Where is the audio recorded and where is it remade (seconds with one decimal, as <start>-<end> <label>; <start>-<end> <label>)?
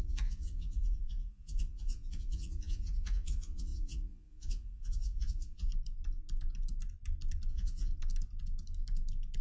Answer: 0.0-5.7 remade; 5.7-7.5 recorded; 7.5-7.9 remade; 7.9-9.4 recorded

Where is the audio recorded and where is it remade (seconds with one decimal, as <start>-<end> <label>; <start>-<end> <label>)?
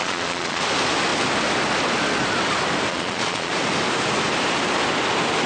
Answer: 0.0-0.6 remade; 0.6-2.9 recorded; 2.9-3.5 remade; 3.5-5.5 recorded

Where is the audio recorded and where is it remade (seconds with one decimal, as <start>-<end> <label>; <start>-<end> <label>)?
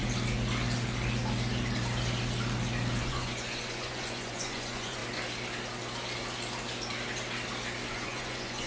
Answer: 0.0-3.0 recorded; 3.0-5.0 remade; 5.0-7.9 recorded; 7.9-8.7 remade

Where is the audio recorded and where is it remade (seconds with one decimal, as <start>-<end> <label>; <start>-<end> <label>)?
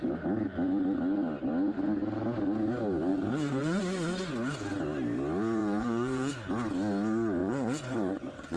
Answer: 0.0-3.1 recorded; 3.1-3.8 remade; 3.8-5.6 recorded; 5.6-6.3 remade; 6.3-7.4 recorded; 7.4-8.6 remade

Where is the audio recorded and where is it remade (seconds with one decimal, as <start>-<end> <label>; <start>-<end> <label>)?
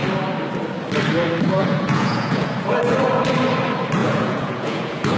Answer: 0.0-1.6 recorded; 1.6-2.6 remade; 2.6-4.0 recorded; 4.0-5.2 remade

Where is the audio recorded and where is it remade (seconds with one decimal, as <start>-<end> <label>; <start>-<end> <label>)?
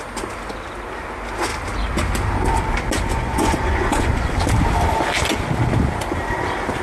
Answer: 0.0-3.1 recorded; 3.1-4.3 remade; 4.3-6.8 recorded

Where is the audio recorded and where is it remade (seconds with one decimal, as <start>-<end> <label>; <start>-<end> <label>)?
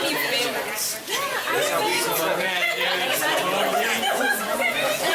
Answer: 0.0-1.9 recorded; 1.9-3.2 remade; 3.2-3.7 recorded; 3.7-5.1 remade